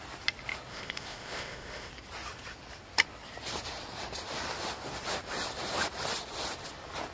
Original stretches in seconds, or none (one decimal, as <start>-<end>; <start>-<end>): 0.0-0.7; 1.9-7.1